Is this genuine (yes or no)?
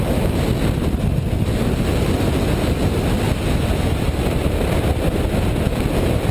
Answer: yes